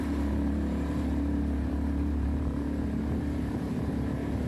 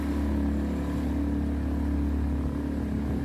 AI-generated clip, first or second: first